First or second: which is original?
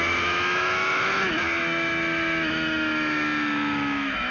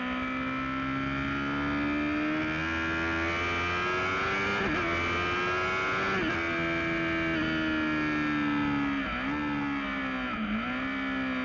second